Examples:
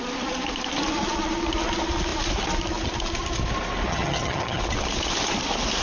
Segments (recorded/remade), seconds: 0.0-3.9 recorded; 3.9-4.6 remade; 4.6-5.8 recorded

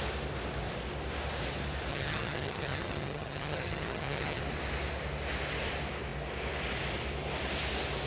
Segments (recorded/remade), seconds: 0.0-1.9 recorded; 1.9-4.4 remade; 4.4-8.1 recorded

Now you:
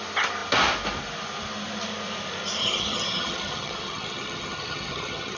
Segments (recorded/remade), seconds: 0.0-2.6 recorded; 2.6-5.4 remade

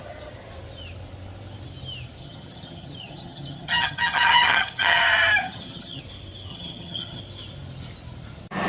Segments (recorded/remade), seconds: 0.0-2.2 recorded; 2.2-5.0 remade; 5.0-5.4 recorded; 5.4-6.0 remade; 6.0-6.5 recorded; 6.5-7.2 remade; 7.2-8.7 recorded

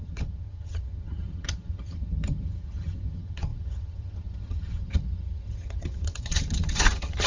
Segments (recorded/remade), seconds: 0.0-7.3 remade